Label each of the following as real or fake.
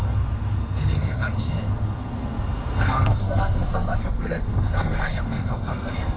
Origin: fake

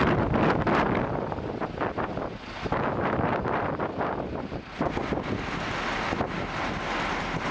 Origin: real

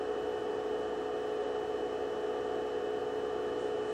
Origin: real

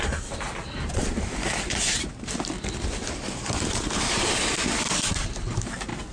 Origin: real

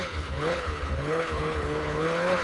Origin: fake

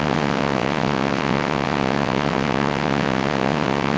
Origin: fake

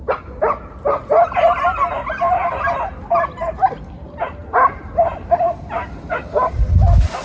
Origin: real